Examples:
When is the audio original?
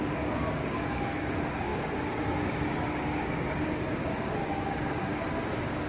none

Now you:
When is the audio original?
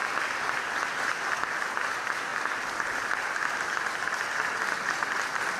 0.0-5.6